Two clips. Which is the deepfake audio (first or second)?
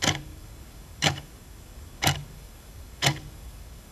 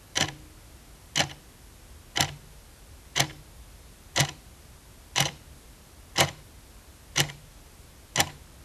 first